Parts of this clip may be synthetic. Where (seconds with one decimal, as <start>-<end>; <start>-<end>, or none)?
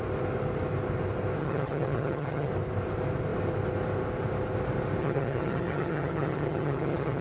1.4-2.5; 5.0-7.2